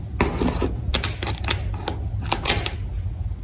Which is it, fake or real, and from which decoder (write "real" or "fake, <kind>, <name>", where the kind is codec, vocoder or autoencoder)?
real